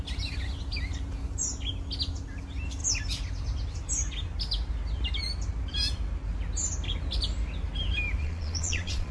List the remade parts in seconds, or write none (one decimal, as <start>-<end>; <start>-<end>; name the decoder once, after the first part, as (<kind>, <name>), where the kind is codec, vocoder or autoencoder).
8.2-9.1 (vocoder, Vocos)